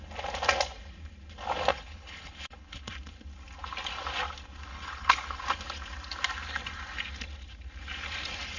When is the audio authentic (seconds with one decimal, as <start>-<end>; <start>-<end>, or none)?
0.0-1.7; 2.9-4.7; 5.4-8.6